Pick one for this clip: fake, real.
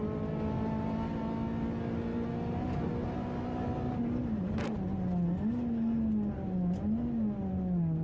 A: real